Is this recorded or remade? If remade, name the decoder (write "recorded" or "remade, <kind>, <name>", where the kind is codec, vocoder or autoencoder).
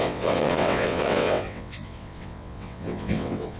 remade, vocoder, WaveNeXt